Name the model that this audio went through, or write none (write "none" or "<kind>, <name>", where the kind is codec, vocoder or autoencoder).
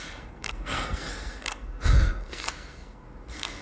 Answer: codec, SNAC